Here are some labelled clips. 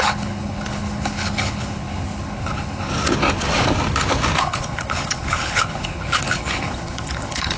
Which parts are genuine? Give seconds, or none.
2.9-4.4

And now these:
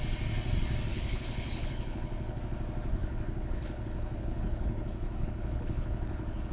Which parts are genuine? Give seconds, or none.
0.0-0.9; 2.4-2.9

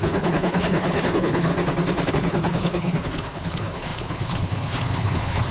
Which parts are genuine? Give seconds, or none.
1.5-2.1

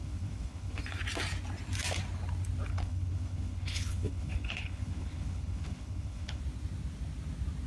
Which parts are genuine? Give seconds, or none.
0.8-2.7; 6.4-7.7

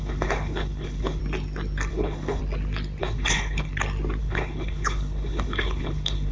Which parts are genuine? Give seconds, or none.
1.2-1.9; 2.4-3.0; 3.7-4.2